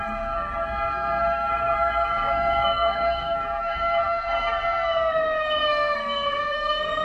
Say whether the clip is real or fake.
fake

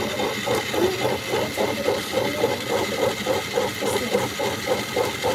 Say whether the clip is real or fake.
real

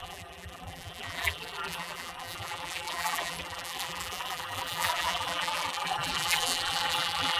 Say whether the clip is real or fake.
fake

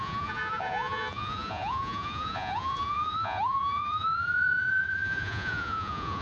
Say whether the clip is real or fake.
fake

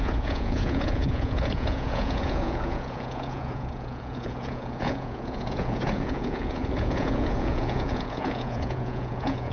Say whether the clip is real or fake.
fake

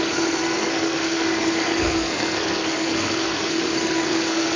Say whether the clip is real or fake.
fake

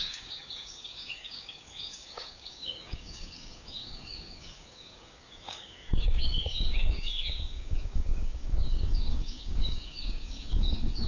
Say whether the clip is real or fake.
fake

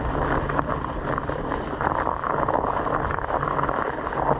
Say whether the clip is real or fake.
real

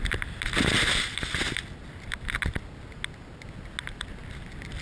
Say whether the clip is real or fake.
real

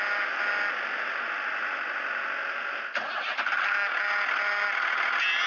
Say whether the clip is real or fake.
real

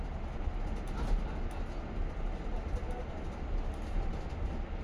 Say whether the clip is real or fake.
real